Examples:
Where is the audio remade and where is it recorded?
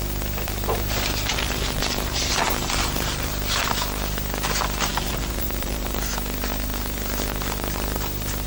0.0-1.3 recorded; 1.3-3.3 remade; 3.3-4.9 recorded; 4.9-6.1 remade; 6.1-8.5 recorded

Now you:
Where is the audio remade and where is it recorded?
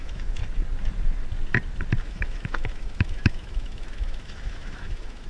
0.0-0.4 remade; 0.4-2.0 recorded; 2.0-5.3 remade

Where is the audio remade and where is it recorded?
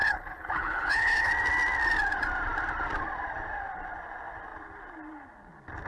0.0-1.3 remade; 1.3-5.9 recorded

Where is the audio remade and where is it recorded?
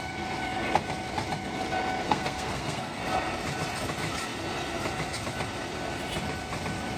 0.0-2.0 recorded; 2.0-3.0 remade; 3.0-7.0 recorded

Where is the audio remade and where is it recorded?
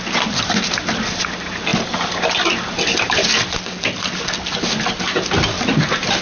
0.0-6.2 recorded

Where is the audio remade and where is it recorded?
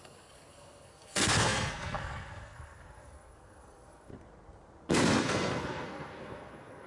0.0-4.1 remade; 4.1-5.2 recorded; 5.2-6.9 remade